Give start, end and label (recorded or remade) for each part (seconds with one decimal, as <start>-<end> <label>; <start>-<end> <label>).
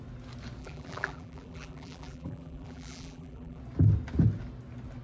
0.0-0.6 recorded; 0.6-3.6 remade; 3.6-5.0 recorded